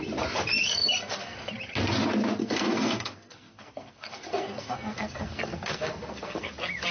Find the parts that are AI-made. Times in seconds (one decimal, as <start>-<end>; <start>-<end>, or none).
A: 0.6-1.5; 2.4-6.5